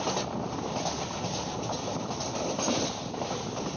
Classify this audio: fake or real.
real